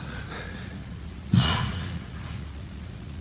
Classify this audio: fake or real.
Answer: fake